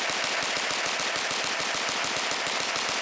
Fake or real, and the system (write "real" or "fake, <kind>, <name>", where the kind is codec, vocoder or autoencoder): real